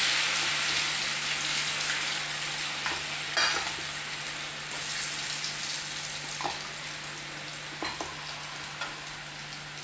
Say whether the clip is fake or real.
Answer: real